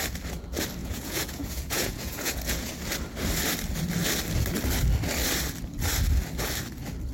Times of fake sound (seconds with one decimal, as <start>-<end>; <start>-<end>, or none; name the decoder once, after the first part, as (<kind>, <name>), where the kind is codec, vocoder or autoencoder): 0.8-2.7 (vocoder, Vocos)